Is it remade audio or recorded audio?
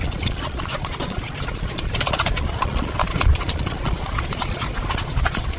remade